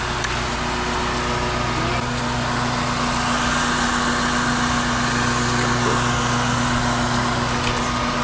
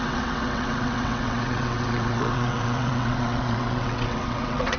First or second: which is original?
first